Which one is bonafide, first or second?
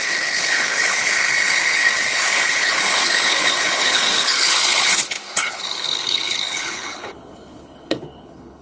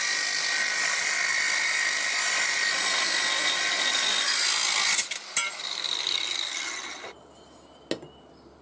second